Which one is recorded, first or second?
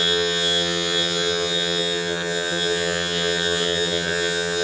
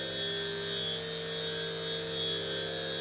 second